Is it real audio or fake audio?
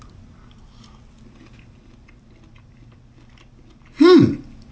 real